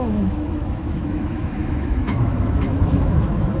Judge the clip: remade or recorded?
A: remade